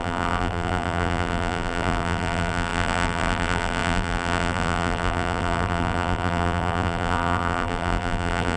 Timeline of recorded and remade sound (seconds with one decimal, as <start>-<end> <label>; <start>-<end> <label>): 0.0-8.6 remade